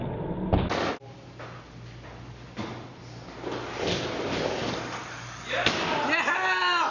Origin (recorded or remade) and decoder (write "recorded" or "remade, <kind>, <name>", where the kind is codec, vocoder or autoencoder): recorded